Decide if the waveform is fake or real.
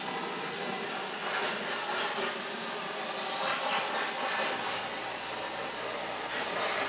real